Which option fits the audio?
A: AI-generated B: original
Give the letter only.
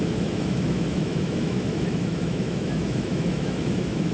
A